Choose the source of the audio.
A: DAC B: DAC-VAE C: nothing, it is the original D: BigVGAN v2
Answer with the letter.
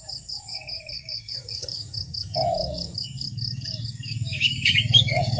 A